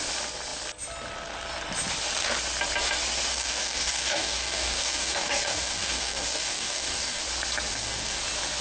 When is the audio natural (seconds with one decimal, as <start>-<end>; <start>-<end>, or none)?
0.0-3.3; 7.2-7.7; 8.2-8.6